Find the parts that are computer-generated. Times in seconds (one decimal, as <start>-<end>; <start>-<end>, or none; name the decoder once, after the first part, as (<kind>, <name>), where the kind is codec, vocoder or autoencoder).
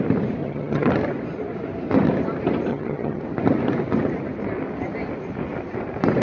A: 0.4-0.9 (vocoder, HiFi-GAN); 2.7-3.2